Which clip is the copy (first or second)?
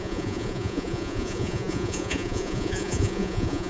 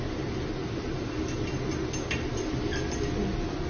first